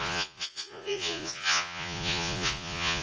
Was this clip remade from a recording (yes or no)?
yes